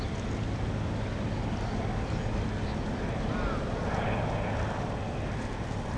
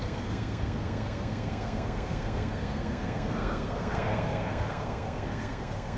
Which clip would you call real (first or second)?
first